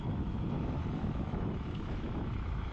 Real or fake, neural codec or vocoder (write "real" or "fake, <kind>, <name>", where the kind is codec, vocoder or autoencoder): fake, autoencoder, DAC-VAE